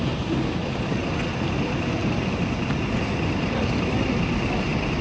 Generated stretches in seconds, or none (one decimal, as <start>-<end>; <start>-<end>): 0.0-1.0; 1.5-5.0